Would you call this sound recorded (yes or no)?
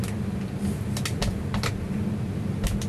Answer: yes